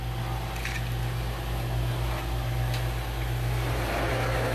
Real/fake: real